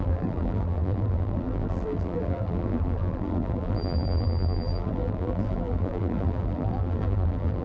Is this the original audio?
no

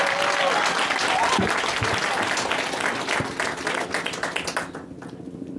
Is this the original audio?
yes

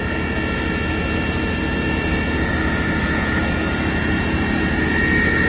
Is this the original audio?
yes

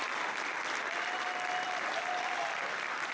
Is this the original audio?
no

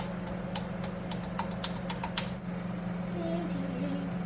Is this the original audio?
yes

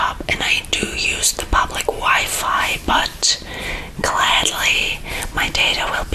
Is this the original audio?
yes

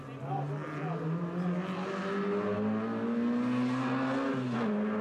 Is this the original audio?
yes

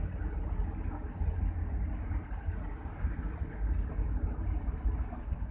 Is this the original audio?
yes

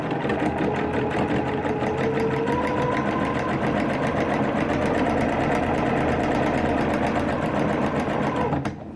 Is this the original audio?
yes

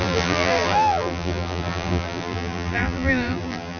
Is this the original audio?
no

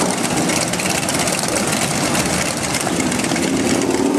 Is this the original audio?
no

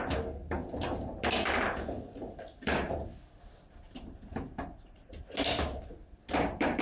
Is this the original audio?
yes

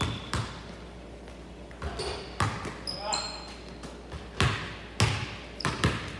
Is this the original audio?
yes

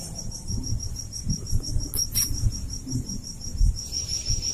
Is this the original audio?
yes